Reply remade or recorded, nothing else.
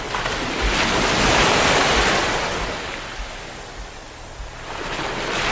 recorded